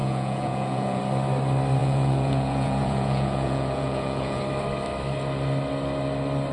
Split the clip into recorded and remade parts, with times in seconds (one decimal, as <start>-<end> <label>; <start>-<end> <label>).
0.0-1.0 remade; 1.0-1.8 recorded; 1.8-4.4 remade; 4.4-6.5 recorded